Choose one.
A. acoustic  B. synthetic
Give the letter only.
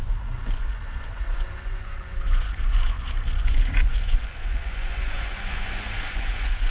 B